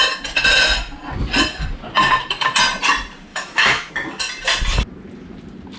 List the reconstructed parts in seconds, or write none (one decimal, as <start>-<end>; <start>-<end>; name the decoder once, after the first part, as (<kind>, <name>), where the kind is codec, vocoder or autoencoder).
3.3-3.9 (autoencoder, DAC-VAE)